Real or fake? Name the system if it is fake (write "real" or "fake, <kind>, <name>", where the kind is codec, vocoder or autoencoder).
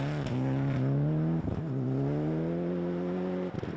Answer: real